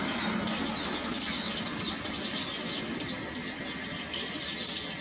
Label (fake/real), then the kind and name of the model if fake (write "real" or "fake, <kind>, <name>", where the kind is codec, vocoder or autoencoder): real